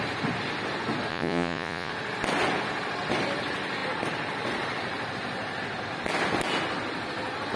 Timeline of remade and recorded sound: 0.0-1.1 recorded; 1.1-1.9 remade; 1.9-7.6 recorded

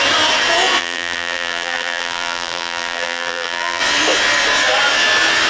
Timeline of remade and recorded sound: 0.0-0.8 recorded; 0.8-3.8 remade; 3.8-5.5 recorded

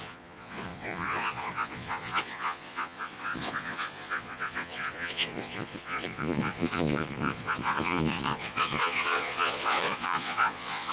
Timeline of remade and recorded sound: 0.0-10.9 remade

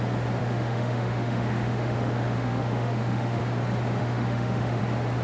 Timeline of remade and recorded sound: 0.0-0.4 recorded; 0.4-3.4 remade; 3.4-4.0 recorded; 4.0-4.8 remade; 4.8-5.2 recorded